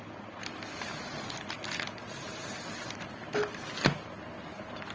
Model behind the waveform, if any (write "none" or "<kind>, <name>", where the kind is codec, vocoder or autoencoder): none